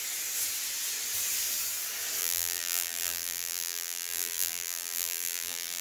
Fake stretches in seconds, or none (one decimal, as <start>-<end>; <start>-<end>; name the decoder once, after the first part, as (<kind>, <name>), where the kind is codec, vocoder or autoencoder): 2.2-5.8 (vocoder, BigVGAN v2)